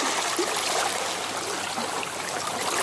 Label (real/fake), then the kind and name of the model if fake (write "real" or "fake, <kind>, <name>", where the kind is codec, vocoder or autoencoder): real